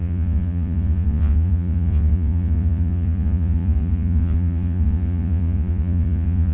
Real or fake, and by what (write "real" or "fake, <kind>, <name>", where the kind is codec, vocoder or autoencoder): fake, vocoder, Vocos